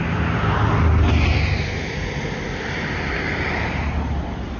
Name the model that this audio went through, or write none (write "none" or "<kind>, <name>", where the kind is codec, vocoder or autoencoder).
none